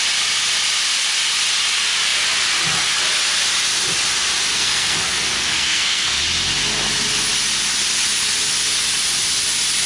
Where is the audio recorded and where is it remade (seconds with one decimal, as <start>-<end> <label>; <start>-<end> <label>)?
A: 0.0-4.5 recorded; 4.5-6.2 remade; 6.2-9.9 recorded